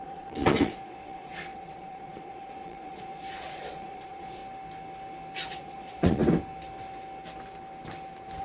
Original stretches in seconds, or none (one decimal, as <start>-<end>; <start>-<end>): 4.4-5.5; 6.2-8.4